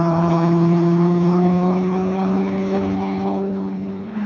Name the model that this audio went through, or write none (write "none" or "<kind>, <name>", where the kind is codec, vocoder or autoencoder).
codec, HILCodec